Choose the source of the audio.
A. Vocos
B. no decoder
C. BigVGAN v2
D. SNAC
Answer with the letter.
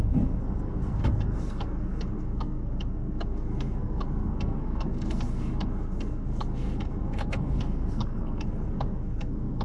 D